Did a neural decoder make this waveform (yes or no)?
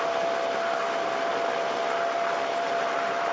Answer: no